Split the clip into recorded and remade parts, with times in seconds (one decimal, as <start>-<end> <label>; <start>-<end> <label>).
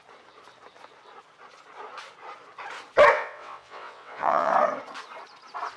0.0-3.1 recorded; 3.1-4.5 remade; 4.5-5.8 recorded